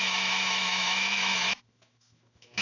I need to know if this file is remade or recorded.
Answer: remade